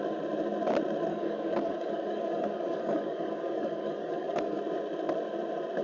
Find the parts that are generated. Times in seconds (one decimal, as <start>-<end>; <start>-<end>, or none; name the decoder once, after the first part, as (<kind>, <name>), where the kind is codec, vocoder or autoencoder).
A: 1.1-4.6 (codec, DAC)